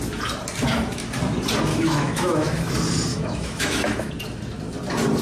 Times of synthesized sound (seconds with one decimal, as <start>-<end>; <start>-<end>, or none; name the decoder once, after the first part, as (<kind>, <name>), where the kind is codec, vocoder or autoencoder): 1.7-2.7 (autoencoder, DAC-VAE); 3.1-4.1